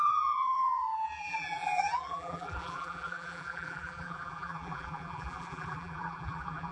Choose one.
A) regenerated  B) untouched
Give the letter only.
A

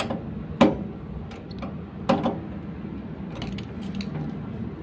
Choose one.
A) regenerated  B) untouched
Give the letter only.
B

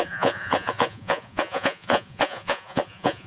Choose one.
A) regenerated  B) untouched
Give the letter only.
A